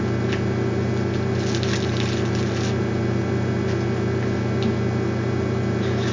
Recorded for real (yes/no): yes